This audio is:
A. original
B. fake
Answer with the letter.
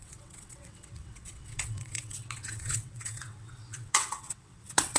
B